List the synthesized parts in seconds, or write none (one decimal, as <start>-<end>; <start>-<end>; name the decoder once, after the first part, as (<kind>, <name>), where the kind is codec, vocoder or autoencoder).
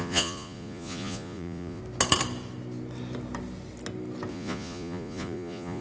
0.0-1.8 (vocoder, Vocos); 4.3-5.8